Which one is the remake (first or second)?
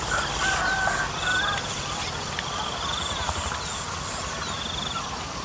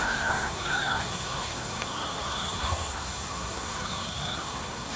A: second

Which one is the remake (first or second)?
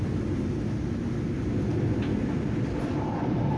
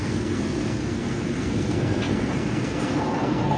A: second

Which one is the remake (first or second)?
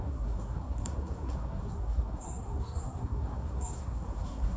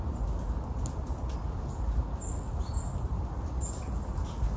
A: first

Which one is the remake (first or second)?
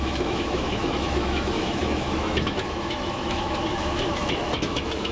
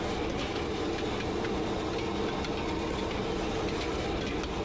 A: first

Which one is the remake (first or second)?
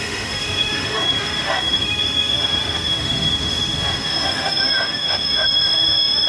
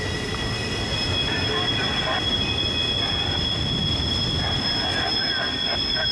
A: first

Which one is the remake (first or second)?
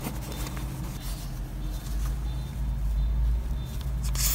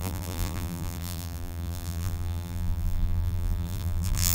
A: second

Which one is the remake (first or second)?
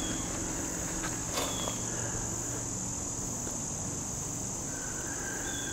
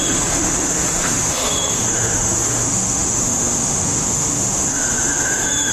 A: second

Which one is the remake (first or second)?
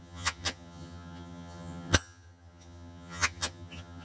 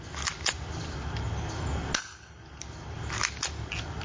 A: first